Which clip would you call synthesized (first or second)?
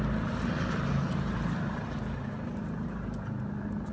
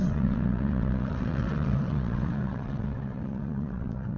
second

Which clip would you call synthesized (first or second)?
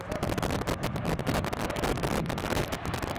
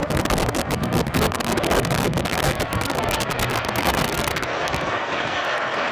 second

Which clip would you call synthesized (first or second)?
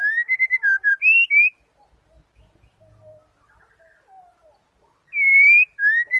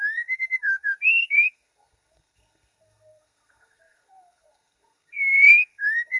second